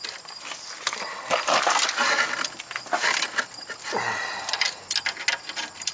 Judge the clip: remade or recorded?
recorded